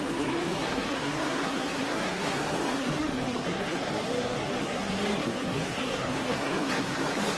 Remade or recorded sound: remade